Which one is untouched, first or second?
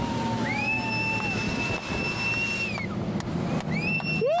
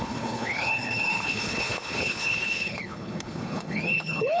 first